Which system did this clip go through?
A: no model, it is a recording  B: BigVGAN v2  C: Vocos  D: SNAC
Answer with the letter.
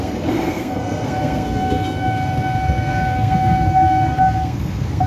D